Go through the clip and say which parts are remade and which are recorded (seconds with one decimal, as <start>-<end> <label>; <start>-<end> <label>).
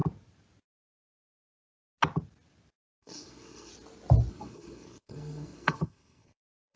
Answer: 0.0-2.7 recorded; 2.7-3.7 remade; 3.7-4.3 recorded; 4.3-6.8 remade